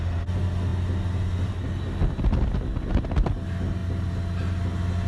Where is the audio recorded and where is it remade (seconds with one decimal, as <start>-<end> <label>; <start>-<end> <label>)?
0.0-5.1 recorded